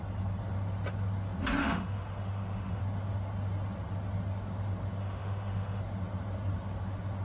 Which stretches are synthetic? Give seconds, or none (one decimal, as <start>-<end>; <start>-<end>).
1.6-2.8; 5.0-5.8